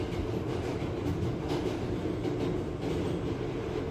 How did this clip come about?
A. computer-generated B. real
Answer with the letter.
B